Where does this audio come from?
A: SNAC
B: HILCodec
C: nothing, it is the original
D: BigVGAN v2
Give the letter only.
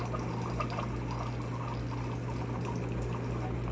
C